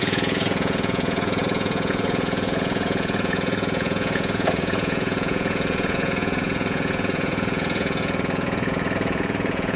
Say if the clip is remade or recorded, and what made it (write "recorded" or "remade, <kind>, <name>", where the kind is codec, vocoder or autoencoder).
remade, vocoder, Vocos